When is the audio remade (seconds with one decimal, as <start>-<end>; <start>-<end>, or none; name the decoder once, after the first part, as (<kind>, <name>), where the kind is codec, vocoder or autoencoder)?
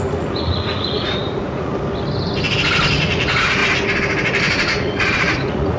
0.0-1.7 (vocoder, Vocos); 2.9-3.6; 4.4-5.8